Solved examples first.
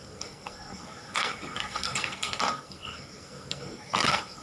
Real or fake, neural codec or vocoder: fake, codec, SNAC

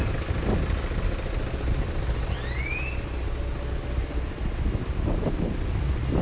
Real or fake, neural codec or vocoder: real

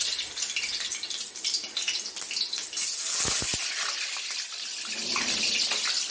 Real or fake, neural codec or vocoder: real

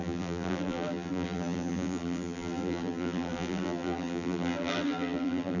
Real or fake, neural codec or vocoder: fake, vocoder, BigVGAN v2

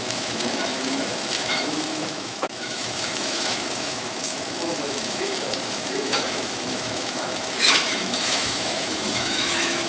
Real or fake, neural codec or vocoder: fake, autoencoder, DAC-VAE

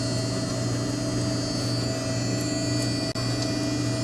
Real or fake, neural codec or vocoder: real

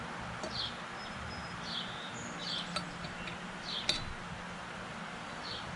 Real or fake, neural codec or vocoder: real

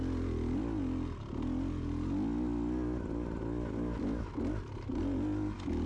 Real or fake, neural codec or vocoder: real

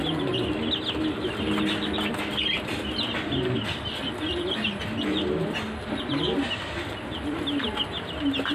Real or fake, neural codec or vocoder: real